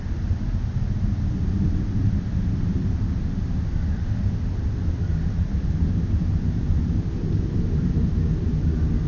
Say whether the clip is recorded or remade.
remade